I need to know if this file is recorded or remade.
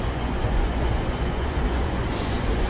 remade